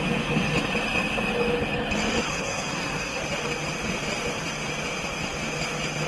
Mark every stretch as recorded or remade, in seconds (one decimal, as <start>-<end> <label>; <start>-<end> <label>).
0.0-2.3 recorded; 2.3-3.2 remade; 3.2-6.1 recorded